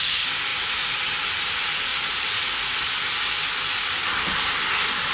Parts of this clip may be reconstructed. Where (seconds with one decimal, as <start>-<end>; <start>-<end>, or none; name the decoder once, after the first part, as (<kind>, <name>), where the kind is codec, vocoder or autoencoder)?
0.5-1.0 (vocoder, Vocos); 1.9-2.9